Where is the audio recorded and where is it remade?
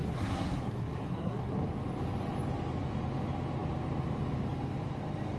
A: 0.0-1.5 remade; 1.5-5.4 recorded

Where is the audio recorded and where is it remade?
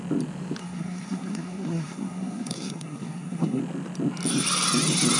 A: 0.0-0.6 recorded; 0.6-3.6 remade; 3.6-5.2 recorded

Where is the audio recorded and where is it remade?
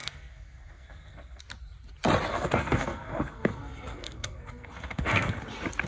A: 0.0-1.4 remade; 1.4-2.3 recorded; 2.3-5.4 remade; 5.4-5.9 recorded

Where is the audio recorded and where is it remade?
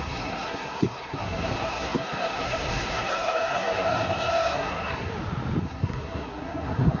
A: 0.0-5.1 remade; 5.1-5.6 recorded; 5.6-7.0 remade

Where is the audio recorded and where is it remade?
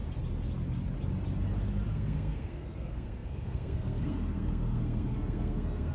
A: 0.0-1.9 recorded; 1.9-5.9 remade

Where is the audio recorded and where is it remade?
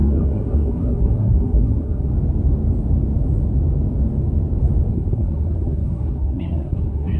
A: 0.0-2.1 remade; 2.1-4.9 recorded; 4.9-7.2 remade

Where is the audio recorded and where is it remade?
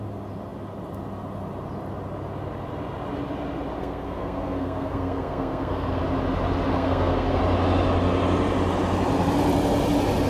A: 0.0-3.8 recorded; 3.8-6.0 remade; 6.0-6.7 recorded; 6.7-7.4 remade; 7.4-10.3 recorded